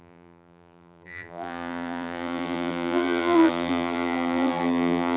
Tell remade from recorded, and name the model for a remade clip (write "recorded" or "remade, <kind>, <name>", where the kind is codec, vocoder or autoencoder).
remade, vocoder, BigVGAN v2